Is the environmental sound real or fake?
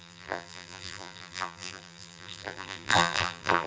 fake